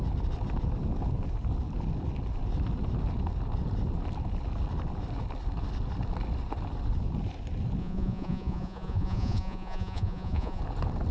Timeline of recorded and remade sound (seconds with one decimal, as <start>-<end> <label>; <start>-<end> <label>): 0.0-7.8 recorded; 7.8-10.6 remade; 10.6-11.1 recorded

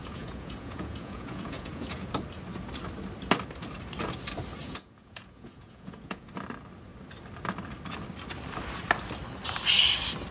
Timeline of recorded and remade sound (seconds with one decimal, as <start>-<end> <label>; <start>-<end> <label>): 0.0-2.1 remade; 2.1-4.6 recorded; 4.6-6.3 remade; 6.3-10.3 recorded

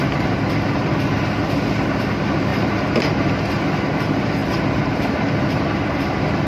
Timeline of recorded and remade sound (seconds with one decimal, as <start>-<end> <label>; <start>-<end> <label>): 0.0-2.5 recorded; 2.5-3.3 remade; 3.3-4.4 recorded; 4.4-5.3 remade; 5.3-6.5 recorded